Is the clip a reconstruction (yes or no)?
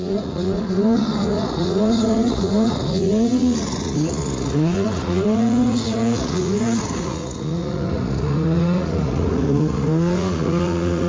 yes